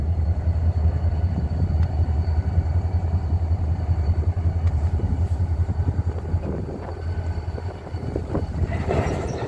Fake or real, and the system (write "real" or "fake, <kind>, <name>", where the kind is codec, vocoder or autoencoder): fake, vocoder, BigVGAN v2